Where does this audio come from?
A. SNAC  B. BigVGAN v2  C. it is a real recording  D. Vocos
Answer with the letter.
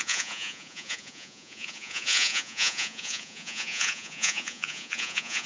D